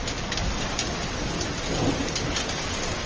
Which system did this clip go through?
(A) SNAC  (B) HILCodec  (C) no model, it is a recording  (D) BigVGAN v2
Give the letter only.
C